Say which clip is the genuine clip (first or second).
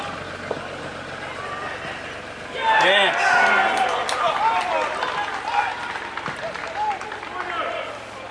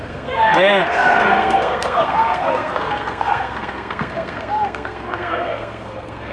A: first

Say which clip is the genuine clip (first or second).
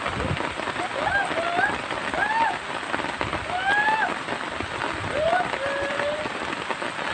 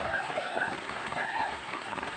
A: first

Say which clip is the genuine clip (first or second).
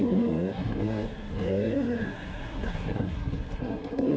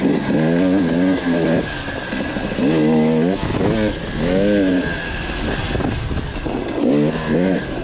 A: second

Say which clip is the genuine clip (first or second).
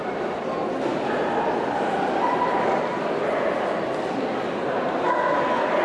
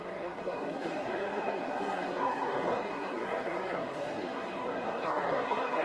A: first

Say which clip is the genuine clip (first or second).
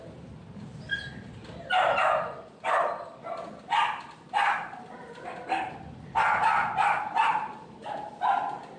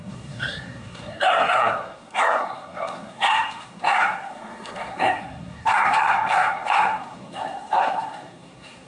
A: first